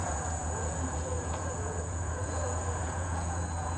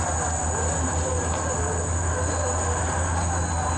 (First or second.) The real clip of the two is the second